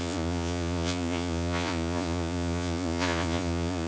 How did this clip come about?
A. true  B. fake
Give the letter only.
B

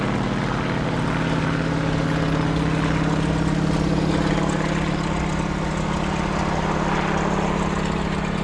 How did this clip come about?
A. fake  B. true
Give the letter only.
B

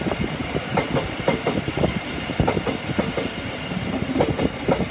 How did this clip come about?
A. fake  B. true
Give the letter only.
B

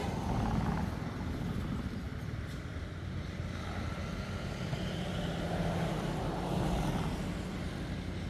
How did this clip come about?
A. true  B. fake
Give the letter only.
A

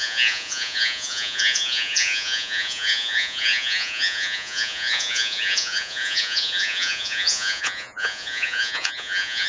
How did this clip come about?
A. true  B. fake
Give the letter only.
B